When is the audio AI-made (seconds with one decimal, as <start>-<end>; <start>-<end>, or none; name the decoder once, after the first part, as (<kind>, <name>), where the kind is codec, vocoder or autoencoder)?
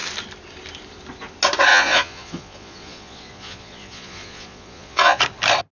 1.7-5.2 (vocoder, Vocos)